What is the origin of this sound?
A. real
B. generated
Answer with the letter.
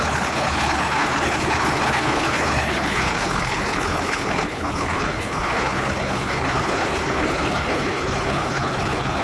B